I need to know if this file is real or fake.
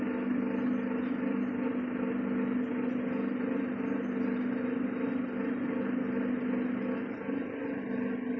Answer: real